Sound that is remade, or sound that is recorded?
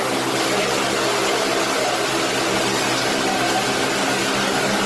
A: recorded